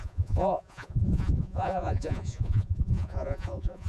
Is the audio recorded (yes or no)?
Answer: no